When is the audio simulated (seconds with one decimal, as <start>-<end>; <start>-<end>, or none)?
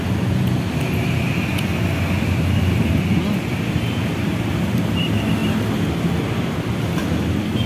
none